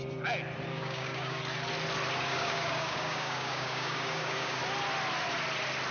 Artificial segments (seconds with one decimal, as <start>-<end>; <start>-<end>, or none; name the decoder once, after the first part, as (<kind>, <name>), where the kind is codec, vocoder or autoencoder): 0.7-1.4 (codec, DAC); 2.3-4.6